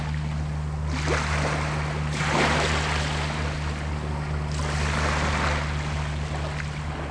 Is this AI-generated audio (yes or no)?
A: no